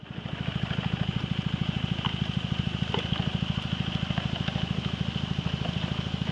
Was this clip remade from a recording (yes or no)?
no